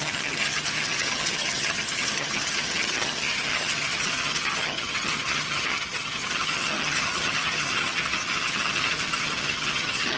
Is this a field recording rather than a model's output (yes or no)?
no